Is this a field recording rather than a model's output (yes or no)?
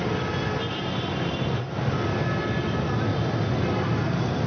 yes